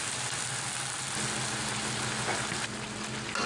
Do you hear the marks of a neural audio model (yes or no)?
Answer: no